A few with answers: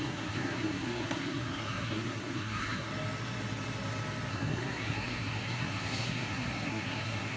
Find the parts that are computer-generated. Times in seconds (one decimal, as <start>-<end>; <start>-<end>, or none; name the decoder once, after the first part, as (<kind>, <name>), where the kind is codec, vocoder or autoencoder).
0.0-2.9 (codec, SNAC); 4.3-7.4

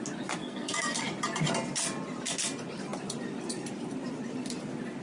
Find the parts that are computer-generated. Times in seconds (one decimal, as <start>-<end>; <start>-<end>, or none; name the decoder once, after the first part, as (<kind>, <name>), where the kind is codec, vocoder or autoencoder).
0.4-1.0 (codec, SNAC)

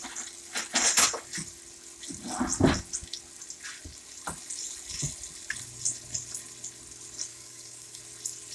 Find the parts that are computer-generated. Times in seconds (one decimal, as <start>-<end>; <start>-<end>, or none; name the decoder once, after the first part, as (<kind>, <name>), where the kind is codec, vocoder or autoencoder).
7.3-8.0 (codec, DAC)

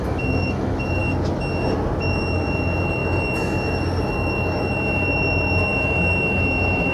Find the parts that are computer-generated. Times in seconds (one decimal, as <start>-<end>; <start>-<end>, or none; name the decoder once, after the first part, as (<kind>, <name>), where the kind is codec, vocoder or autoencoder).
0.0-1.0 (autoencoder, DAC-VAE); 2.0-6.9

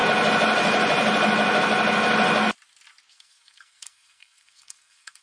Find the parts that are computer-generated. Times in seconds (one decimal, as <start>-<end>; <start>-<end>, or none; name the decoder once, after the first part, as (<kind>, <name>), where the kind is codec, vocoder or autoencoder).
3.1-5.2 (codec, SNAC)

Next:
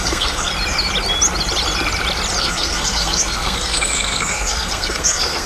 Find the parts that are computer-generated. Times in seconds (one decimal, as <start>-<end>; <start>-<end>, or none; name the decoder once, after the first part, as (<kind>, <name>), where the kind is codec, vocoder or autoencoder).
0.0-0.5 (codec, SNAC); 2.4-5.5